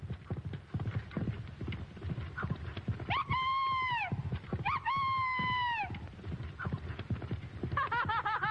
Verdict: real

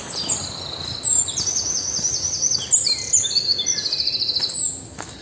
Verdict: real